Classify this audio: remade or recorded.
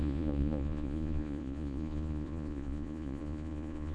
remade